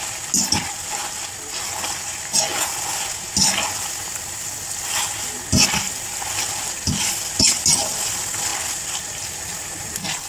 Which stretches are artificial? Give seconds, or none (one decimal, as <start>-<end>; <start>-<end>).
none

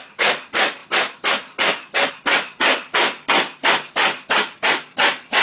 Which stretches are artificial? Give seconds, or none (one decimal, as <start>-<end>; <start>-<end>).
none

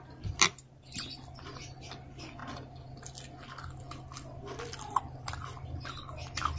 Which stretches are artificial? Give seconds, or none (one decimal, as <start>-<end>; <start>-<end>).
none

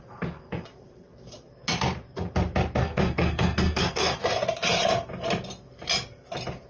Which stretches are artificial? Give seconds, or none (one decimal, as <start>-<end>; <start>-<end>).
2.8-4.2

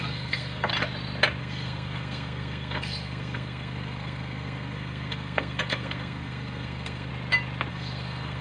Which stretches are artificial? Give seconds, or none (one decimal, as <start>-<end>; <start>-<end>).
0.0-0.7; 1.4-7.1; 7.7-8.4

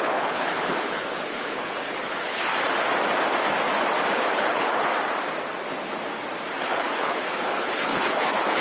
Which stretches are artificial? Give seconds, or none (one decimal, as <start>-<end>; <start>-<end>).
0.0-2.5; 4.1-4.9; 6.6-8.6